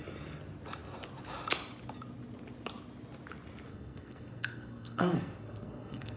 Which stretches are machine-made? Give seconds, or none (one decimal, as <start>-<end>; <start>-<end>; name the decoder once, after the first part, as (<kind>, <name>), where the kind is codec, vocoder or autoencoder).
3.7-6.2 (codec, SNAC)